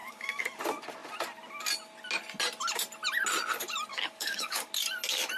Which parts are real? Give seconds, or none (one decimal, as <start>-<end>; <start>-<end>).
0.6-3.9; 4.7-5.4